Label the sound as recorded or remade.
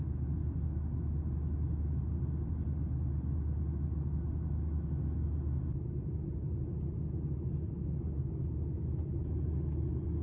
recorded